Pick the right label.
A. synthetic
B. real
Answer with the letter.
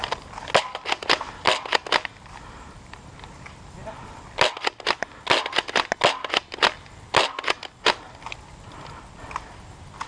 B